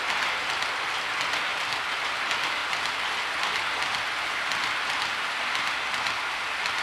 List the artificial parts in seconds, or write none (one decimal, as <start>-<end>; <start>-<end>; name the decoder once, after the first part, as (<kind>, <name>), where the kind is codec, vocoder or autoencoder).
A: none